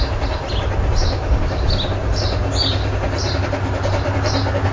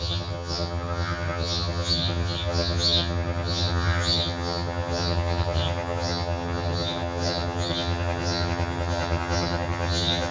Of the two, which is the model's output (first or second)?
second